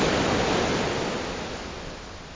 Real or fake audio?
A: real